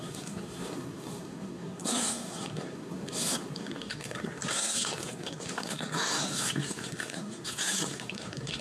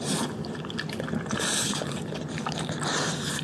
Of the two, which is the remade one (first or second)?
first